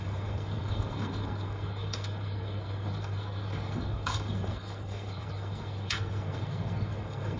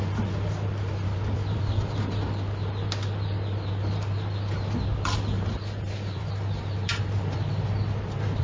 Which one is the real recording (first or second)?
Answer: second